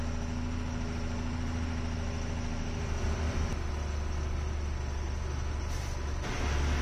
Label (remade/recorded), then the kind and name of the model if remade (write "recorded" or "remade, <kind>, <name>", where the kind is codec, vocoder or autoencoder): recorded